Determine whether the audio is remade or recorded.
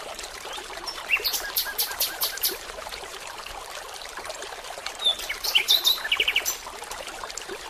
remade